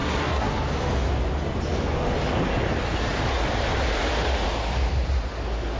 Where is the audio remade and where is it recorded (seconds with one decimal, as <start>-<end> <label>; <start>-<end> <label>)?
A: 0.0-0.5 remade; 0.5-5.8 recorded